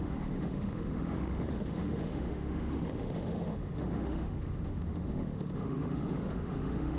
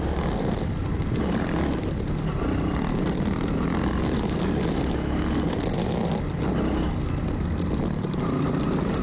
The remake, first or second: first